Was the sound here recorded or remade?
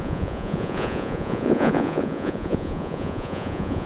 remade